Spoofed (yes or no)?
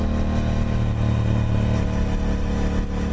no